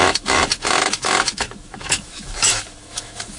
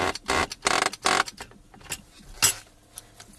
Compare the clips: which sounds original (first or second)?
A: second